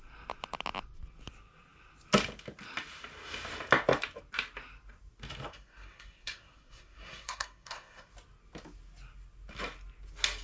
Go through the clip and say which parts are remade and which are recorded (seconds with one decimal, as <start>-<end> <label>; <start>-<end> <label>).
0.0-5.5 recorded; 5.5-8.1 remade; 8.1-10.4 recorded

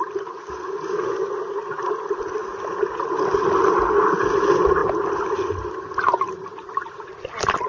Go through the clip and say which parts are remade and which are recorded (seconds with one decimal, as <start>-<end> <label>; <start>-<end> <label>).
0.0-7.7 recorded

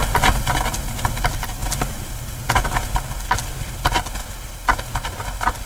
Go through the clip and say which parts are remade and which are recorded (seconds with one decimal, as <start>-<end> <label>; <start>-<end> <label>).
0.0-5.7 recorded